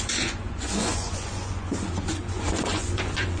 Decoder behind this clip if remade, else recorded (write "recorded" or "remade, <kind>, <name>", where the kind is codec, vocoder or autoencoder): remade, vocoder, Vocos